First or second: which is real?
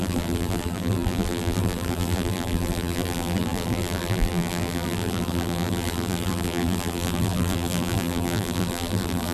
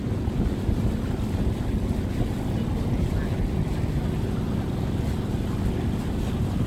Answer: second